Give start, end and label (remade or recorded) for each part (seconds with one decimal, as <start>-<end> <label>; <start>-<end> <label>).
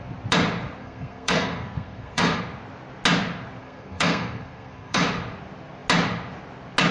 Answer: 0.0-0.8 recorded; 0.8-2.4 remade; 2.4-3.6 recorded; 3.6-5.0 remade; 5.0-6.9 recorded